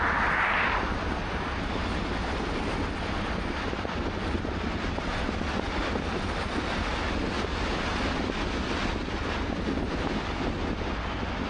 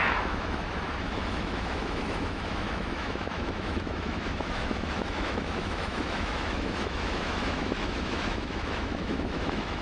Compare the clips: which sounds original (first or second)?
first